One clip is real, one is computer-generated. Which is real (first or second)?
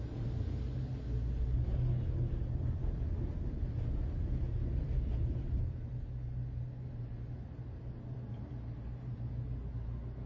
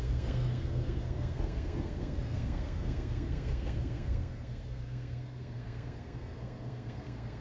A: first